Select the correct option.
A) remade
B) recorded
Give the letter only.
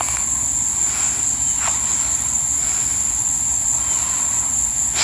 B